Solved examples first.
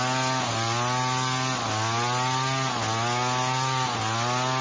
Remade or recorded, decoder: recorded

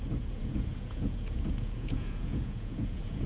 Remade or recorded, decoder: remade, vocoder, Vocos